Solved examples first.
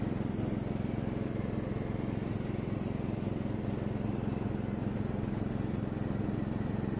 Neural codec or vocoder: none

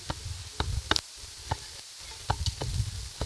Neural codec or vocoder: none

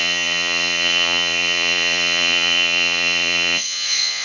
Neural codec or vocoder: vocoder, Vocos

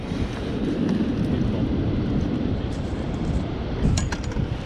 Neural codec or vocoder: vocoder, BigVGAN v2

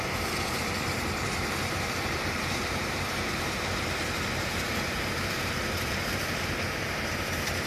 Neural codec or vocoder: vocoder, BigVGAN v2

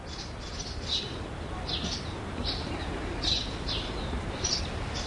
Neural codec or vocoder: none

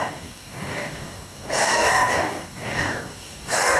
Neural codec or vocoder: codec, DAC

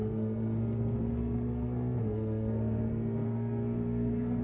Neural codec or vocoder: codec, SNAC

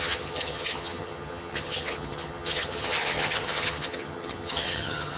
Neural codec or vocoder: vocoder, HiFi-GAN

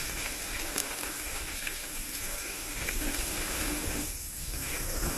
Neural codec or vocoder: codec, DAC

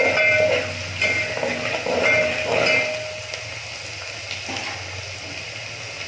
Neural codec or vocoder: none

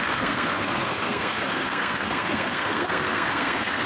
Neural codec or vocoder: codec, SNAC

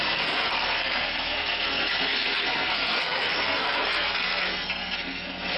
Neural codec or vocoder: codec, SNAC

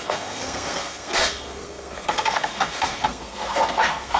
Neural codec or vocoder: codec, SNAC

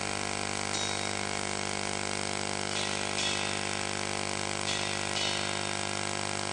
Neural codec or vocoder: none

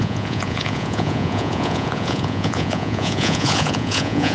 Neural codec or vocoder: vocoder, Vocos